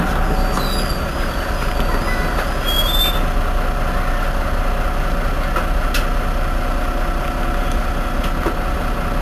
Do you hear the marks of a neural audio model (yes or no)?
no